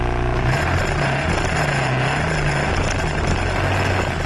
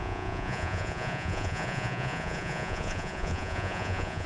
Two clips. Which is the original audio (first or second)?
first